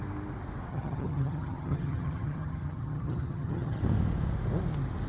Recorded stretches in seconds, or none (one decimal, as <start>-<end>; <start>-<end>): 0.0-0.7; 3.8-5.1

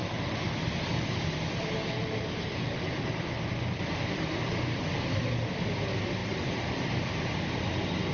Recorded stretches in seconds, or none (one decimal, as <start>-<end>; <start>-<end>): 0.0-8.1

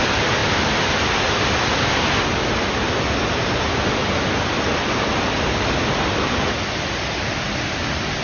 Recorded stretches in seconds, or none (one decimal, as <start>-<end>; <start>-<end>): 0.0-8.2

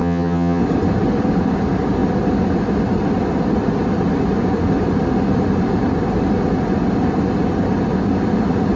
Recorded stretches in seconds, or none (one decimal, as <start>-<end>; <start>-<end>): 0.6-8.8

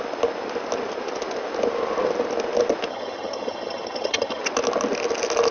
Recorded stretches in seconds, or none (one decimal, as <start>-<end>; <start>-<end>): 0.0-2.9; 4.4-5.5